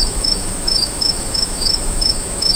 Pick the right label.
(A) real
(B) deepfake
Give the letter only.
B